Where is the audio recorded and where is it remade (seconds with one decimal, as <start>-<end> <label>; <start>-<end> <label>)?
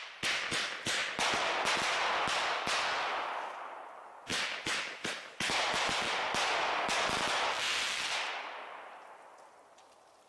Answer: 0.0-10.3 recorded